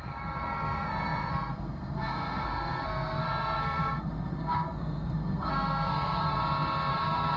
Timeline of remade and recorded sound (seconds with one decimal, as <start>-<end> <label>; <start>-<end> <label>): 0.0-6.4 remade; 6.4-6.9 recorded; 6.9-7.4 remade